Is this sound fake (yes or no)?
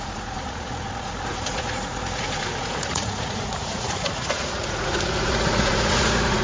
yes